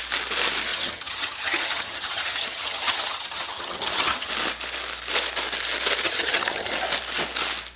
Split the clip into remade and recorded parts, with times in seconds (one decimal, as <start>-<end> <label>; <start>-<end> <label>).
0.0-0.7 recorded; 0.7-4.3 remade; 4.3-6.0 recorded; 6.0-6.7 remade; 6.7-7.8 recorded